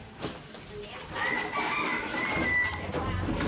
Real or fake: real